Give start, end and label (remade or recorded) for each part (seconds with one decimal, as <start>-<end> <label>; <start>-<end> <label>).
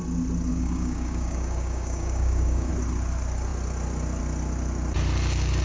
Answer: 0.0-0.5 recorded; 0.5-2.7 remade; 2.7-5.6 recorded